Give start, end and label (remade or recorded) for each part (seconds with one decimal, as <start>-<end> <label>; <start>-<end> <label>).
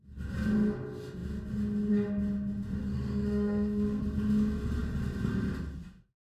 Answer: 0.0-2.8 recorded; 2.8-4.0 remade; 4.0-6.2 recorded